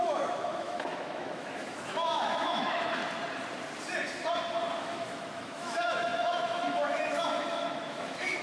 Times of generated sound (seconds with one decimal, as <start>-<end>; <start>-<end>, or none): 0.0-3.0; 4.8-8.4